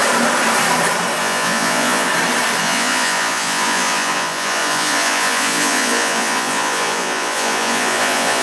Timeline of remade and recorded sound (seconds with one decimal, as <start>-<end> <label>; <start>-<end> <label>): 0.0-1.2 recorded; 1.2-2.1 remade; 2.1-2.6 recorded; 2.6-8.4 remade